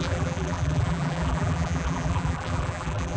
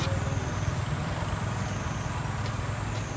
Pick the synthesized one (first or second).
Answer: first